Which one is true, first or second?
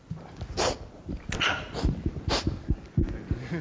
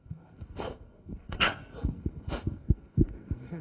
first